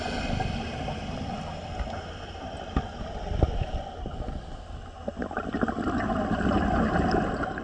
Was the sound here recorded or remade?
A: recorded